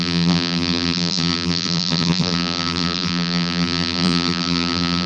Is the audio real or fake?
fake